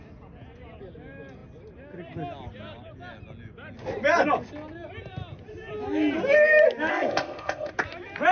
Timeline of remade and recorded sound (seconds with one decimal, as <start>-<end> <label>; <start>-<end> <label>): 0.0-6.9 recorded; 6.9-7.7 remade; 7.7-8.3 recorded